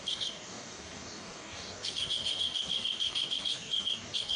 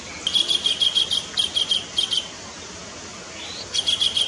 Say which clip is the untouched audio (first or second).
second